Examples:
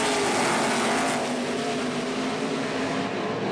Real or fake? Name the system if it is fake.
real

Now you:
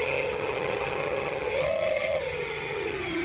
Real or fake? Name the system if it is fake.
fake, vocoder, HiFi-GAN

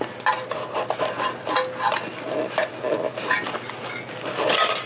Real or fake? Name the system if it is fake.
real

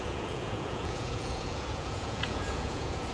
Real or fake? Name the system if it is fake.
fake, vocoder, Vocos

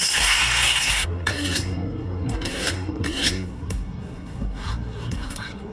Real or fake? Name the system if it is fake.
fake, codec, SNAC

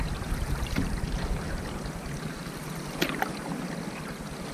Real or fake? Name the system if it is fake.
real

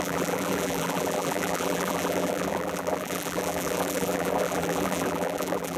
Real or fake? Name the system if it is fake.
fake, vocoder, BigVGAN v2